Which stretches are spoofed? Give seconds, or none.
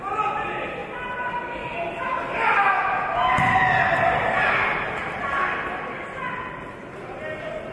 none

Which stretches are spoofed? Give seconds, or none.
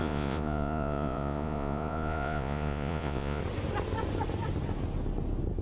0.0-3.4 (vocoder, Vocos)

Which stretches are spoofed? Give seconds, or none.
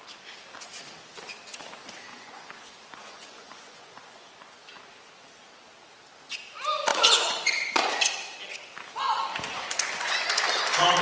2.1-4.6 (vocoder, Vocos); 6.9-8.0; 9.5-10.4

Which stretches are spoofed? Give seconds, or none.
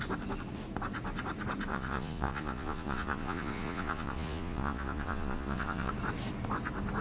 1.7-5.9 (vocoder, Vocos)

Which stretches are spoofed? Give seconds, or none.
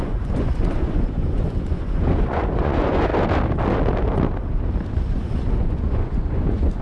0.0-3.1 (vocoder, Vocos); 5.0-6.8